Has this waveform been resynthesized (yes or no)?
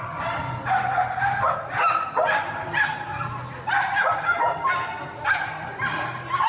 no